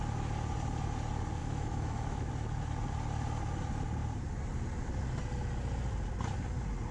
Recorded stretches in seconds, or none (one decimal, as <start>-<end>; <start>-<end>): 0.0-1.4; 2.3-6.9